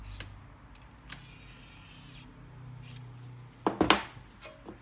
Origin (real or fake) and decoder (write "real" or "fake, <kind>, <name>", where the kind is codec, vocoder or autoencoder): real